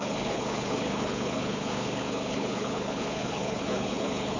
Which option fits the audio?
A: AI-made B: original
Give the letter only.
A